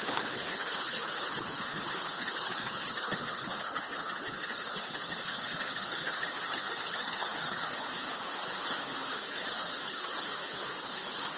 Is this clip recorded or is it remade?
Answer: remade